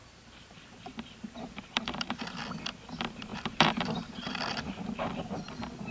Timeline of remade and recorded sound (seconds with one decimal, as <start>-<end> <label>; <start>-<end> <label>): 0.0-2.4 remade; 2.4-3.3 recorded; 3.3-4.4 remade; 4.4-5.9 recorded